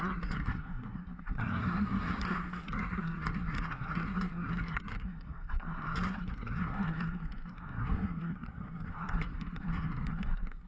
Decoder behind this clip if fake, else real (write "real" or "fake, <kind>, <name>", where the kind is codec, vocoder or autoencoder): fake, codec, SNAC